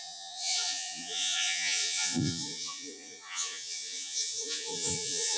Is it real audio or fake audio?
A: fake